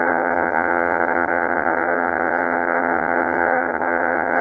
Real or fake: fake